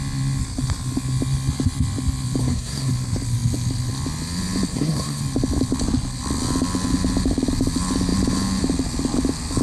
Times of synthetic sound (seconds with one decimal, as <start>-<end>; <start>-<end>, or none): 2.4-2.9; 4.7-5.2